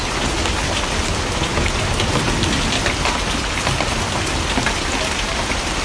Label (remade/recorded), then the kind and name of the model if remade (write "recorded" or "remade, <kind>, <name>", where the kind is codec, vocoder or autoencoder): recorded